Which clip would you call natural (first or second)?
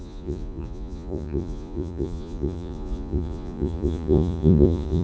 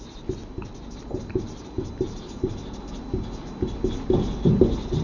second